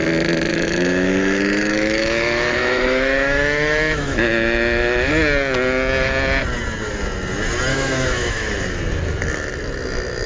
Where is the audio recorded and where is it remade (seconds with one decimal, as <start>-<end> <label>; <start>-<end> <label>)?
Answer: 0.0-0.5 recorded; 0.5-5.1 remade; 5.1-7.7 recorded; 7.7-8.5 remade; 8.5-10.3 recorded